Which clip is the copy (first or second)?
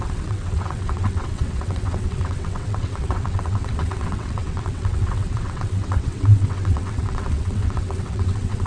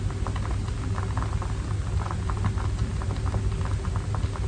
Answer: first